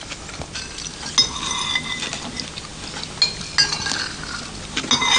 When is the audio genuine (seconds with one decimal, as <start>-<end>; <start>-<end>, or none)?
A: 0.0-5.2